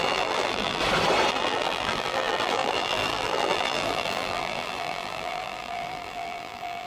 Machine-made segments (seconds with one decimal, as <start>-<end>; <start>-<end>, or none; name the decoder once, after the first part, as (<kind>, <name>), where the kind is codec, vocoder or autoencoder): 0.0-0.8 (vocoder, BigVGAN v2); 1.3-6.9